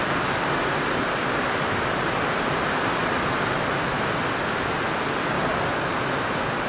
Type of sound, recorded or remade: recorded